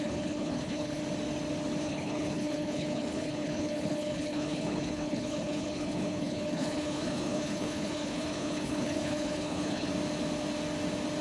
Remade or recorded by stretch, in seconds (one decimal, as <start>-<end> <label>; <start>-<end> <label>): 0.0-1.0 remade; 1.0-1.8 recorded; 1.8-9.9 remade; 9.9-11.2 recorded